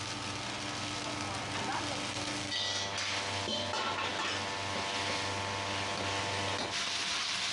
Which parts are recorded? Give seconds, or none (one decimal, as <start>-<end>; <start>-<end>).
0.0-7.5